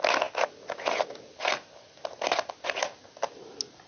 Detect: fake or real real